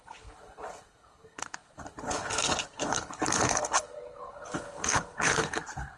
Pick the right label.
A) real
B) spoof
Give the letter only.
B